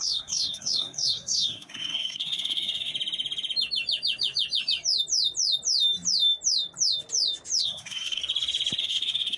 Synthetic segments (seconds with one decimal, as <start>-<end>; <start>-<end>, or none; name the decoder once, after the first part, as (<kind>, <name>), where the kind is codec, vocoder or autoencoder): 0.0-2.9 (codec, SNAC); 7.6-8.2; 8.8-9.4